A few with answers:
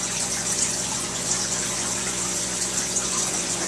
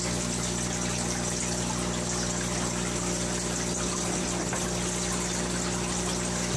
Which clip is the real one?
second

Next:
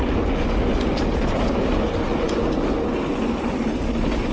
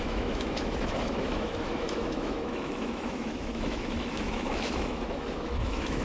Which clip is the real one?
first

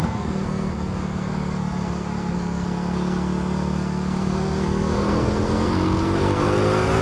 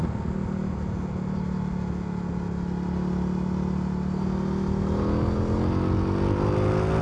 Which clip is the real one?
second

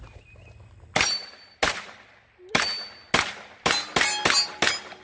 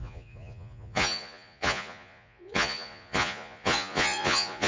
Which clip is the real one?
first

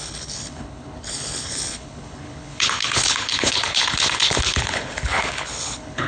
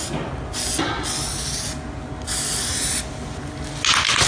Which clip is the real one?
second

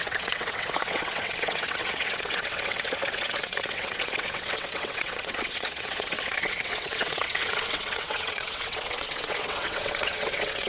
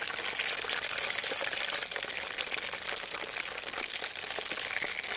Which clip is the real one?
second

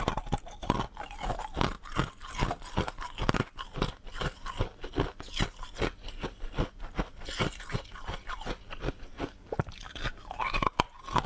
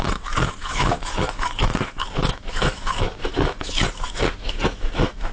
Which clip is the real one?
first